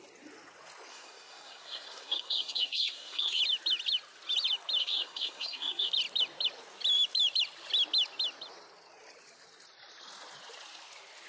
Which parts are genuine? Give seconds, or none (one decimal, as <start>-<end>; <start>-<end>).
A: 0.0-0.9; 3.4-4.8; 5.9-11.3